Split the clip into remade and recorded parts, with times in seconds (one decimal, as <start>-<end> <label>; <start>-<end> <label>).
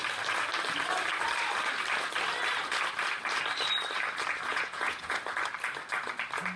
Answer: 0.0-4.5 recorded; 4.5-5.2 remade; 5.2-6.6 recorded